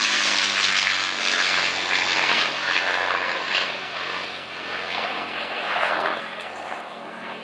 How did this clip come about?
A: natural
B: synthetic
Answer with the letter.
B